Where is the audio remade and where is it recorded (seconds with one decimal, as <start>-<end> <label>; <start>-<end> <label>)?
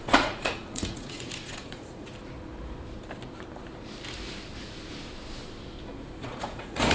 0.0-2.1 remade; 2.1-6.2 recorded; 6.2-6.9 remade